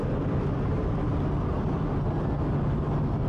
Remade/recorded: recorded